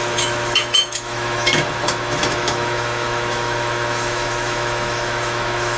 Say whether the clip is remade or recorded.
remade